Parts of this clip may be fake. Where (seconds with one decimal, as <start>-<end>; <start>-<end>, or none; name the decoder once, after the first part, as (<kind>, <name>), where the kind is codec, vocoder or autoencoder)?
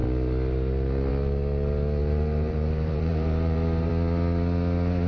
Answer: 2.0-3.9 (vocoder, BigVGAN v2)